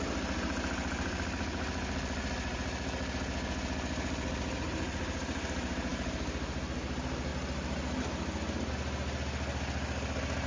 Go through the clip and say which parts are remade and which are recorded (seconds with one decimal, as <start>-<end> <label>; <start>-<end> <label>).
0.0-10.5 recorded